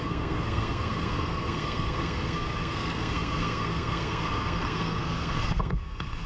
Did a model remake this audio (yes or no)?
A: yes